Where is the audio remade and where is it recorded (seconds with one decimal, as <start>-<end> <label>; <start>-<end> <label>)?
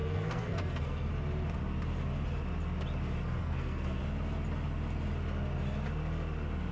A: 0.0-1.1 remade; 1.1-3.4 recorded; 3.4-4.0 remade; 4.0-6.7 recorded